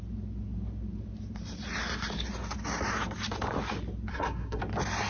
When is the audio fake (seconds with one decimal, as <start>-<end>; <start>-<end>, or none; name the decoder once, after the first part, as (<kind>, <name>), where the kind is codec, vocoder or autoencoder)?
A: 4.1-4.6 (codec, SNAC)